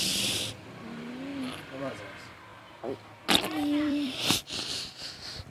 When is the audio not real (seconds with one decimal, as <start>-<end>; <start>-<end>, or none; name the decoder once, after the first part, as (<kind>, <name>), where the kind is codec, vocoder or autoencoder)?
0.0-5.5 (vocoder, BigVGAN v2)